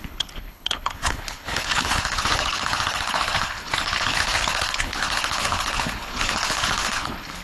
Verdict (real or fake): fake